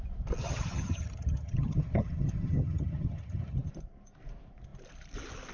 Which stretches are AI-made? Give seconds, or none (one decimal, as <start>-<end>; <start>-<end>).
0.4-3.7